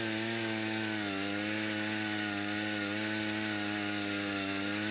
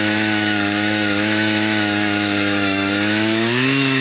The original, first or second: first